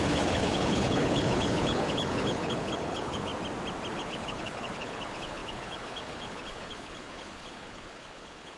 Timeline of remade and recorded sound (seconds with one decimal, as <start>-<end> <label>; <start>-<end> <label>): 0.0-3.3 remade; 3.3-3.9 recorded; 3.9-8.6 remade